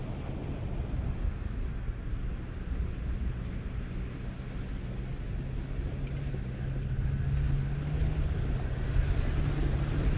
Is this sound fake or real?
real